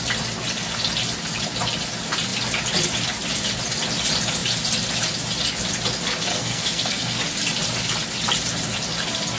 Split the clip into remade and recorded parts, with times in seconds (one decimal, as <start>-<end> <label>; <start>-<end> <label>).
0.0-6.3 recorded; 6.3-7.2 remade; 7.2-9.4 recorded